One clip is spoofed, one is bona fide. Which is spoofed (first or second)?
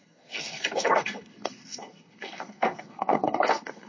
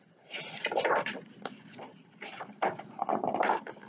first